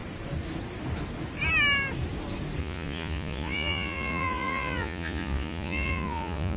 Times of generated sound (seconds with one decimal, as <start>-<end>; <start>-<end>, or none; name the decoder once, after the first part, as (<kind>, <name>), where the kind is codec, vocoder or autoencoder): 2.6-6.6 (vocoder, Vocos)